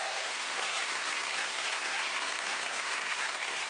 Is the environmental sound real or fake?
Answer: fake